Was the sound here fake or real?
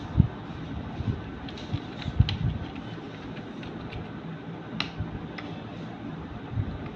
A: real